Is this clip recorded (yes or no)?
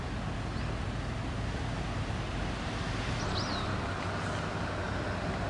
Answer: yes